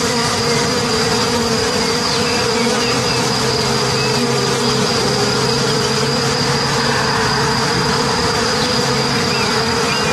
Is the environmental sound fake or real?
real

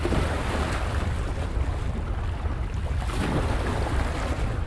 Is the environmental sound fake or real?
real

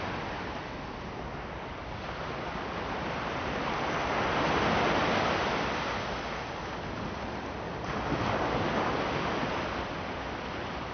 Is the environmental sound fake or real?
real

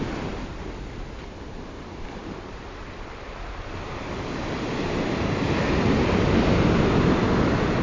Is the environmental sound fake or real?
real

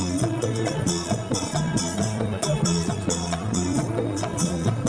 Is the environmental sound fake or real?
fake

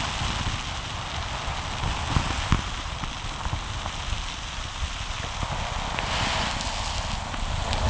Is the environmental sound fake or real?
real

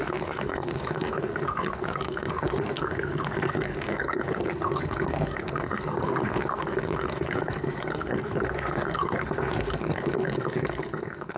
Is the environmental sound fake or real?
fake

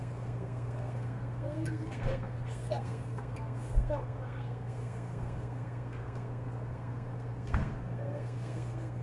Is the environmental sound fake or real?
fake